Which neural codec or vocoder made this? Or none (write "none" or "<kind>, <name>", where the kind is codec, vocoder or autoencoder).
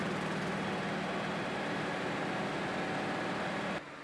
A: none